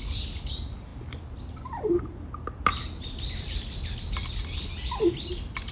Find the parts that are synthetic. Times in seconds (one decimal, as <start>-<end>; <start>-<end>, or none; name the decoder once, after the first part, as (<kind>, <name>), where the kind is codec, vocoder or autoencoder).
none